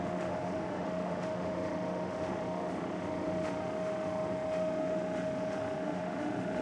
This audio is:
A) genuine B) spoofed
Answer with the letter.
B